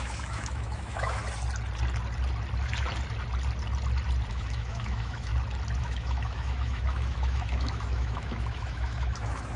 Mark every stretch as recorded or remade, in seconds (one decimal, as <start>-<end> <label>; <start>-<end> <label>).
0.0-1.2 remade; 1.2-4.3 recorded; 4.3-5.3 remade; 5.3-5.8 recorded; 5.8-9.6 remade